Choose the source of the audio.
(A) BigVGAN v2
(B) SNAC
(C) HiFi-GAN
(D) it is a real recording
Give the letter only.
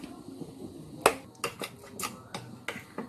D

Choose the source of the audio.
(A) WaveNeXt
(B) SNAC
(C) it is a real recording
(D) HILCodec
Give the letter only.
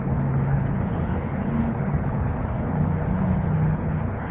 D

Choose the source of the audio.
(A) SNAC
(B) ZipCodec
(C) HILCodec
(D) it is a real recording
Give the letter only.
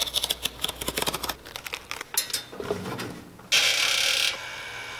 D